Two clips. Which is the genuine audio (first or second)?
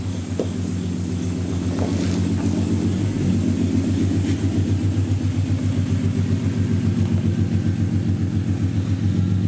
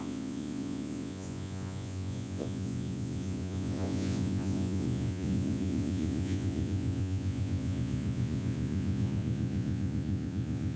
first